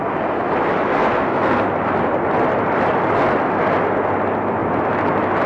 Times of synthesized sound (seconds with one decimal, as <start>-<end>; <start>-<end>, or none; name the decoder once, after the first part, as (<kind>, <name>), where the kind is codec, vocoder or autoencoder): 1.0-1.7 (codec, SNAC)